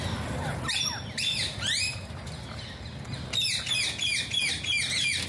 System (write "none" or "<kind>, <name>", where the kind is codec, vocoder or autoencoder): none